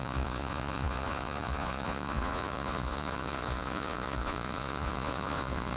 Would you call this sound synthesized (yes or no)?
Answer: yes